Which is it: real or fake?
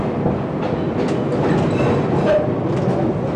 real